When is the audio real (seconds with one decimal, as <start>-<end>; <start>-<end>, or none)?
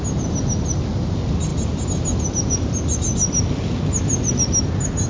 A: 0.0-5.1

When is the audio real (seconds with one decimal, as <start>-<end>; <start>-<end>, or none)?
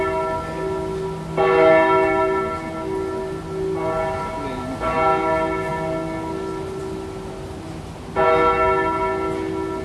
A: 0.0-9.8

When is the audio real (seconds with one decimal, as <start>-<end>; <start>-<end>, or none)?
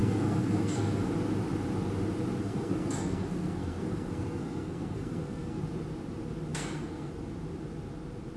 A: 1.1-2.4; 5.6-6.5; 7.1-8.4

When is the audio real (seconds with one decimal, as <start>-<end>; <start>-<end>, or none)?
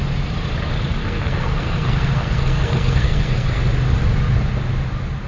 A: 0.0-1.0; 3.6-5.3